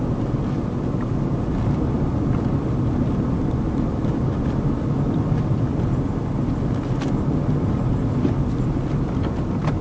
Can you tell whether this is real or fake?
real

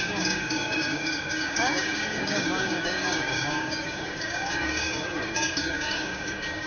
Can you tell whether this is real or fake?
fake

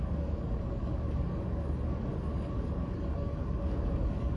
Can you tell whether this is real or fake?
fake